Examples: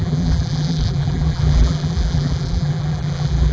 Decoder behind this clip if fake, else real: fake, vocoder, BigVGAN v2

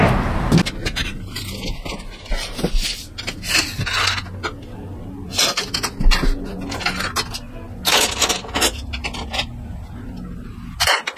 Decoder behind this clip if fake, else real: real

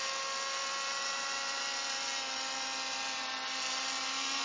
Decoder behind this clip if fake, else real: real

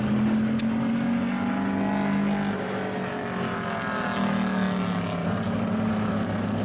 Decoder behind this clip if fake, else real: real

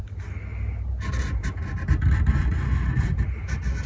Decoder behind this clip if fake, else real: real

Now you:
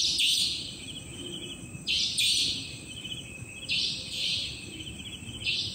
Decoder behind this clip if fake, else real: fake, vocoder, BigVGAN v2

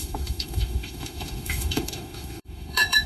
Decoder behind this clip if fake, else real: fake, autoencoder, DAC-VAE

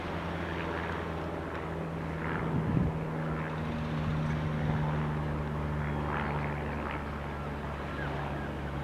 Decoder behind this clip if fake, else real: real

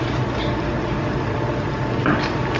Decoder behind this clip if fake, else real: real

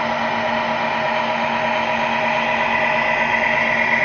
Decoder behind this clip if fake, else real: real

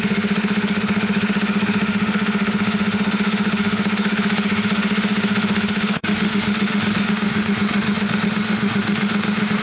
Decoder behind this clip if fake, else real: fake, autoencoder, DAC-VAE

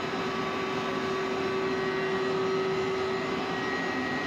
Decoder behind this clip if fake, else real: real